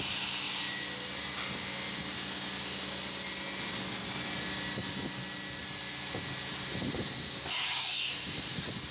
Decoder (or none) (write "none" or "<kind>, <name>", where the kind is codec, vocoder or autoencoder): none